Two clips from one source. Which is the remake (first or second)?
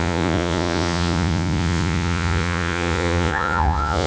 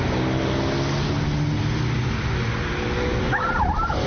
first